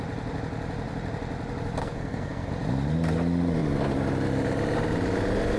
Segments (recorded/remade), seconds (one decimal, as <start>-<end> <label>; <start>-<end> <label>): 0.0-1.8 recorded; 1.8-2.5 remade; 2.5-5.6 recorded

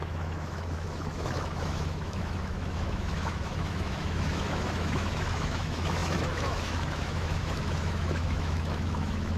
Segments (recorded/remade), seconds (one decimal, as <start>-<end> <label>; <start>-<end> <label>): 0.0-9.4 remade